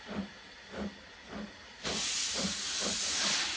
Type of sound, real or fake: real